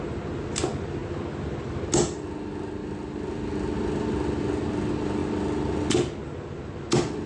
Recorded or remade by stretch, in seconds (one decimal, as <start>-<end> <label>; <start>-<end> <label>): 0.0-7.3 recorded